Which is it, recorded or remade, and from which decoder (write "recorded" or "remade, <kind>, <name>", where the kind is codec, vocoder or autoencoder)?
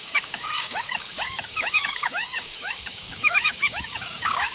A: remade, codec, DAC